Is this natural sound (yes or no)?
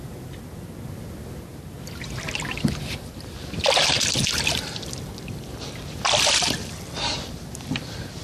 yes